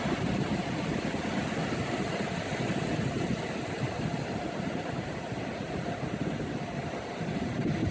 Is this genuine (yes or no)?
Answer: yes